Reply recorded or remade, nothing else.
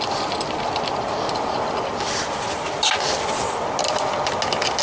recorded